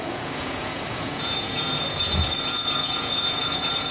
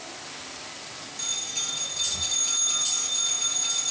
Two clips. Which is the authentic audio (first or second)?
second